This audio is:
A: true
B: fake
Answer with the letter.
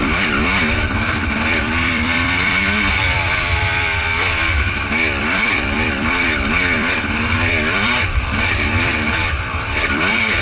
B